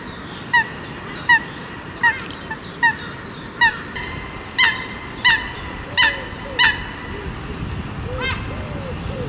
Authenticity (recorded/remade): recorded